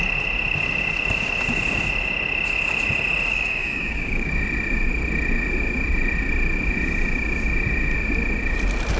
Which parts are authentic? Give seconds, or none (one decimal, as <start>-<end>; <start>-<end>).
0.0-3.3; 4.3-9.0